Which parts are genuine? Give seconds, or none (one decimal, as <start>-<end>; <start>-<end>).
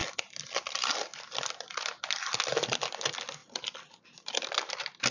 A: 2.5-3.4